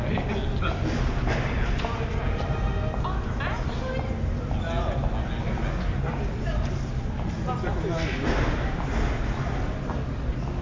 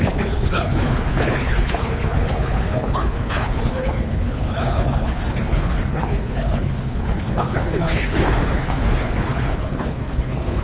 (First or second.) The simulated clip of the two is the second